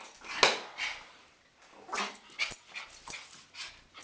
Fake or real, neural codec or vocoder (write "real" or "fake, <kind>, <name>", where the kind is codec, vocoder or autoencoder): real